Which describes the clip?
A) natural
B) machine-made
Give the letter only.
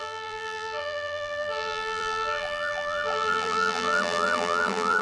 B